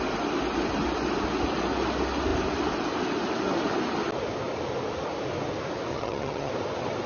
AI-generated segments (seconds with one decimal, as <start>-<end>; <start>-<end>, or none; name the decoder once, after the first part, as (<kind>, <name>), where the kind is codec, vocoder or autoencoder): 5.9-6.5 (vocoder, HiFi-GAN)